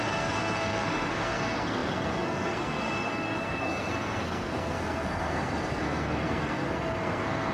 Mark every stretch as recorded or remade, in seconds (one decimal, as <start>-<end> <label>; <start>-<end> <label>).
0.0-7.5 remade